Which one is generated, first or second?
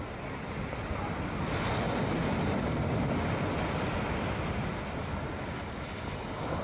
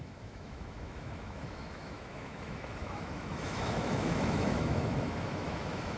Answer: second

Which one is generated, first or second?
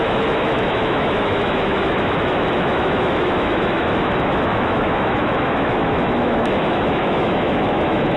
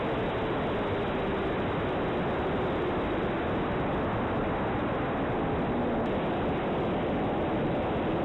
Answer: first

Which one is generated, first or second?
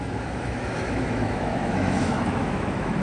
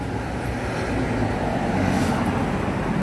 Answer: first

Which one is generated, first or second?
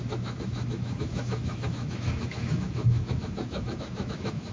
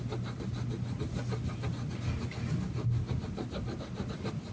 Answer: first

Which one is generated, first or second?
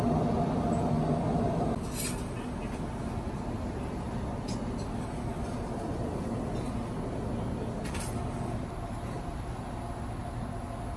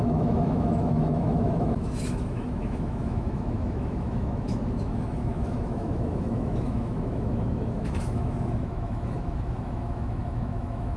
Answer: second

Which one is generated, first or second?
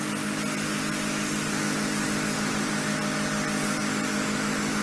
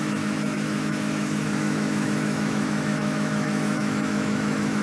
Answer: second